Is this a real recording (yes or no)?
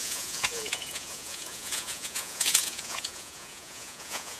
no